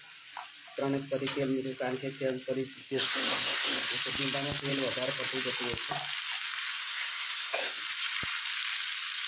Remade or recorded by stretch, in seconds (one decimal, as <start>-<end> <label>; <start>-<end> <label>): 0.0-2.8 recorded; 2.8-3.9 remade; 3.9-6.8 recorded; 6.8-7.8 remade; 7.8-9.3 recorded